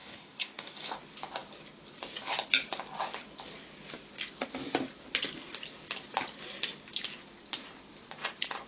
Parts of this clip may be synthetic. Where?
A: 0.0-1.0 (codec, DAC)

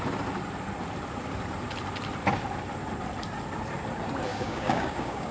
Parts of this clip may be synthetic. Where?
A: 4.3-5.3 (codec, DAC)

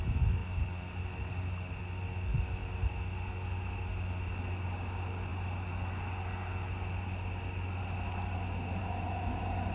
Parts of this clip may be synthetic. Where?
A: none

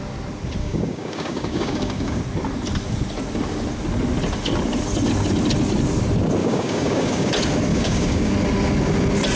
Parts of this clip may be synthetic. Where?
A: 0.6-2.2 (codec, DAC); 6.4-7.3; 7.7-8.3

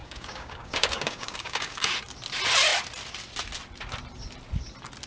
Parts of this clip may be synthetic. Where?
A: 0.0-1.9 (codec, DAC)

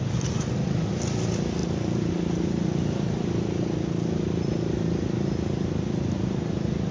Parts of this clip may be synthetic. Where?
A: none